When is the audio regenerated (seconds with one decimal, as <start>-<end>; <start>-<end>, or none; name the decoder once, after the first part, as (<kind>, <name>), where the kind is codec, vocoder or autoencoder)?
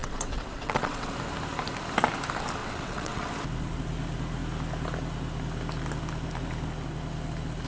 0.0-1.1 (vocoder, WaveNeXt); 2.6-3.3